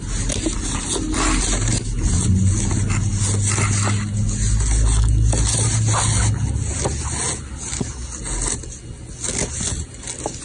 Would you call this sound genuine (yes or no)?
yes